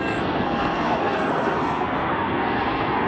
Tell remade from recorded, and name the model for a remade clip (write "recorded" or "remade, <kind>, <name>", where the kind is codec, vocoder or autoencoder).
remade, codec, SNAC